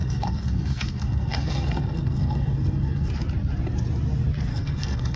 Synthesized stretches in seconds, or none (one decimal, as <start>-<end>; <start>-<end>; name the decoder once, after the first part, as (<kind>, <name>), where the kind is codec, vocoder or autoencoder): 0.0-3.1 (codec, SNAC); 4.5-5.2